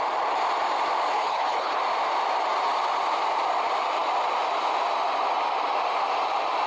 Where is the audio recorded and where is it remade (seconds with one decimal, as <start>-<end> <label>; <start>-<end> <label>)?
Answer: 0.0-1.1 recorded; 1.1-1.8 remade; 1.8-6.7 recorded

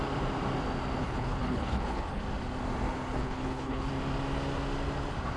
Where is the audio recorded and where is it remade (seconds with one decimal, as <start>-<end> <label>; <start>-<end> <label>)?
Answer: 0.0-1.0 recorded; 1.0-2.2 remade; 2.2-3.2 recorded; 3.2-3.9 remade; 3.9-5.4 recorded

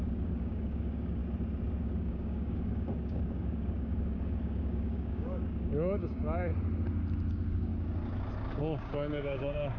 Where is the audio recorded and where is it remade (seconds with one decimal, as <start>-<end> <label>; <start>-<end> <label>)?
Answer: 0.0-1.2 remade; 1.2-1.8 recorded; 1.8-6.5 remade; 6.5-7.3 recorded; 7.3-7.7 remade; 7.7-8.6 recorded; 8.6-9.8 remade